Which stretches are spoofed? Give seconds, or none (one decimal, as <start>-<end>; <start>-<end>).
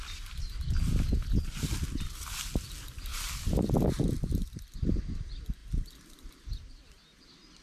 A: 3.1-5.0